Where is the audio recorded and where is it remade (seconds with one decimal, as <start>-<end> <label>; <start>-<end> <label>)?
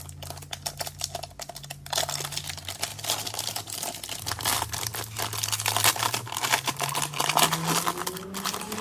0.0-8.8 recorded